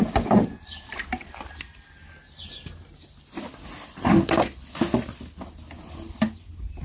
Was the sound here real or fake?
real